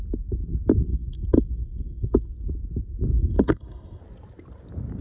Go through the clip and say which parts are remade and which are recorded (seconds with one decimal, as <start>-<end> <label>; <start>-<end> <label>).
0.0-0.9 recorded; 0.9-2.3 remade; 2.3-3.1 recorded; 3.1-4.0 remade; 4.0-5.0 recorded